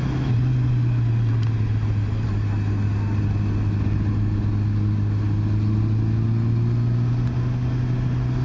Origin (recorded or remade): recorded